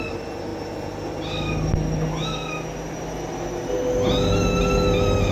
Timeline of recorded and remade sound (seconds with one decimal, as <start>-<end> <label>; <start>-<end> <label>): 0.0-0.5 recorded; 0.5-3.7 remade; 3.7-5.3 recorded